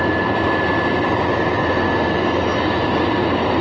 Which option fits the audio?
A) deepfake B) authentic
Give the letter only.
B